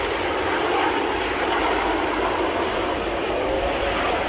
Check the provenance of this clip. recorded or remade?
recorded